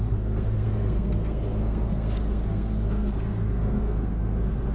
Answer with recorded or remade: remade